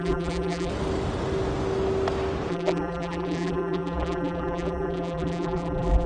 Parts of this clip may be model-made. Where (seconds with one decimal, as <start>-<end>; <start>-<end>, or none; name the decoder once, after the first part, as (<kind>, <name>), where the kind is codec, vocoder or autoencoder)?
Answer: 0.0-0.7 (vocoder, BigVGAN v2); 2.5-6.1

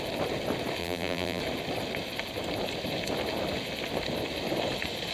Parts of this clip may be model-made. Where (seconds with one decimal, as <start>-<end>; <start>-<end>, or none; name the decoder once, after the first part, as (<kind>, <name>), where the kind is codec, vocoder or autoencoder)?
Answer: 0.8-1.4 (vocoder, BigVGAN v2)

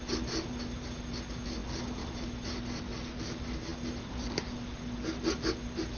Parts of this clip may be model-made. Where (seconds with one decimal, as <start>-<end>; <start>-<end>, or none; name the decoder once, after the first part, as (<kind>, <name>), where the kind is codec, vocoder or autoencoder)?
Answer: none

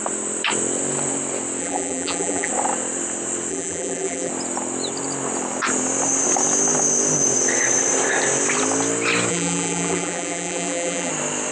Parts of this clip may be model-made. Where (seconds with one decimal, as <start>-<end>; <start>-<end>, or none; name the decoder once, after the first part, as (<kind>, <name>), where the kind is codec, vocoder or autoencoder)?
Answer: 1.6-2.5 (vocoder, BigVGAN v2); 3.5-4.3; 9.3-11.1

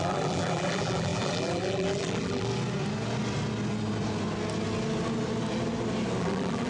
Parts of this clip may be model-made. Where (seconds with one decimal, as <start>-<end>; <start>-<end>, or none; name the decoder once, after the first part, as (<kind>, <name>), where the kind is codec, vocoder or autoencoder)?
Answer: 0.0-2.5 (vocoder, BigVGAN v2); 6.2-6.7